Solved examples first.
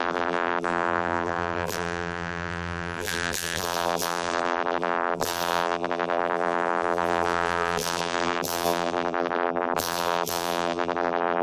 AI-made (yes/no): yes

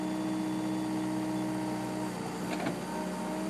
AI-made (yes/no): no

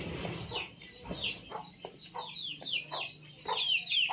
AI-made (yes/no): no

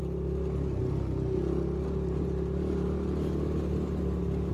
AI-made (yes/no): no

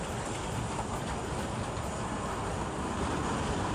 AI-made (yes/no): yes